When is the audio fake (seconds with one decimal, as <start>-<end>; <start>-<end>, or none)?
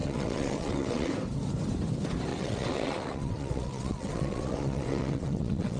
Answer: 0.0-1.1; 2.3-5.8